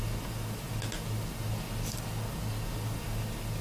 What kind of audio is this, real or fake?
real